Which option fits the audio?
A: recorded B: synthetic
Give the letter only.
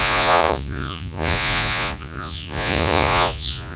B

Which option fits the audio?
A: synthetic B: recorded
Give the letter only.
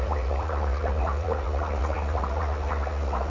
A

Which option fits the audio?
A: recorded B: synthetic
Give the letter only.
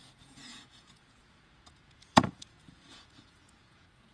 B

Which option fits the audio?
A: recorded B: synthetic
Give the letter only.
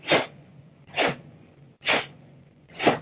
B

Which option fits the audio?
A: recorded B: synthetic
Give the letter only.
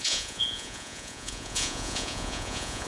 B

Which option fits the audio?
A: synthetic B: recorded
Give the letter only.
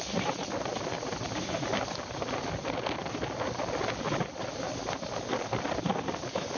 B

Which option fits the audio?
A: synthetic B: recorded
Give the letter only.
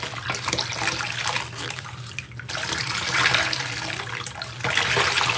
B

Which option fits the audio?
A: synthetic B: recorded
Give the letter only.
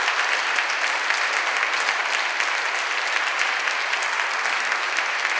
B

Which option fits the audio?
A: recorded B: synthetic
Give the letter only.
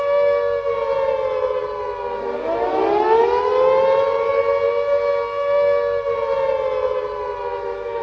A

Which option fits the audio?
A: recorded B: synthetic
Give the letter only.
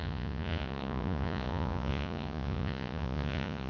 B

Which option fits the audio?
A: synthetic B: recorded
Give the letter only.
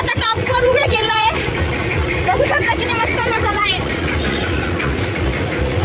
A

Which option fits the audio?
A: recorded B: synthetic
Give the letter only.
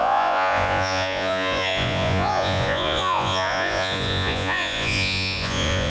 B